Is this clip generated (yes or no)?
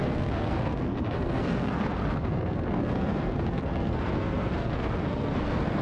yes